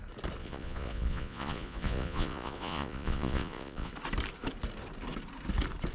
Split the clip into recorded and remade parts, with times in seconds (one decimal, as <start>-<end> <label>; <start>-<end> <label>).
0.0-0.4 recorded; 0.4-3.9 remade; 3.9-5.9 recorded